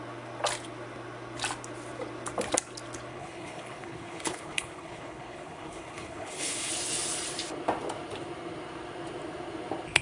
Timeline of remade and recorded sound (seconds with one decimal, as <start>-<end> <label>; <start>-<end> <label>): 0.0-3.1 recorded; 3.1-6.7 remade; 6.7-10.0 recorded